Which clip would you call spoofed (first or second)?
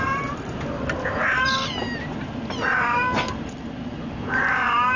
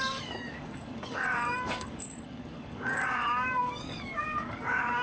second